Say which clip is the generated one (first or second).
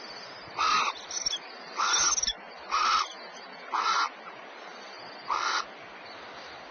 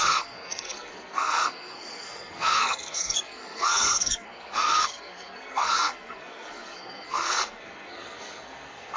second